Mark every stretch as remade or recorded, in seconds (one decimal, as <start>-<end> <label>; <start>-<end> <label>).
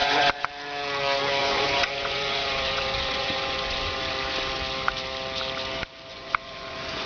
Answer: 0.0-0.5 remade; 0.5-1.4 recorded; 1.4-4.0 remade; 4.0-6.1 recorded; 6.1-7.1 remade